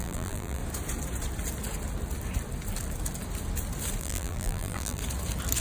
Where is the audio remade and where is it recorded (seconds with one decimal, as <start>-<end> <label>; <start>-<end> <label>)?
0.0-0.6 remade; 0.6-4.0 recorded; 4.0-5.0 remade; 5.0-5.6 recorded